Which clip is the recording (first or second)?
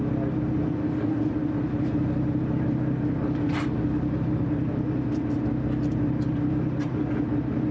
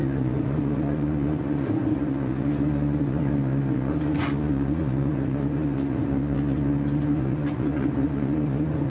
first